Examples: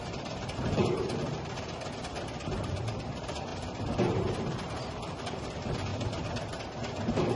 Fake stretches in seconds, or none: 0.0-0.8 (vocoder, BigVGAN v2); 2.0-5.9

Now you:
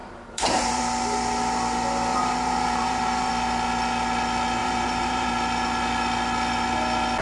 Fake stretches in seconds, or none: 0.0-0.8 (vocoder, BigVGAN v2); 2.1-3.3; 4.6-5.3

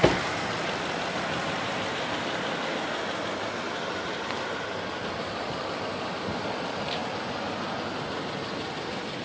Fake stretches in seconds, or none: none